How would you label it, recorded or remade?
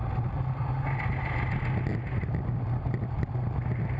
recorded